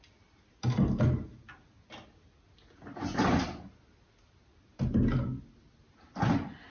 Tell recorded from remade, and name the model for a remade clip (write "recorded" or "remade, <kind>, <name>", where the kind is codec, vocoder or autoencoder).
recorded